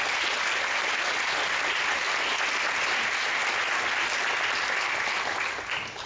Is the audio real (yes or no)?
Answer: yes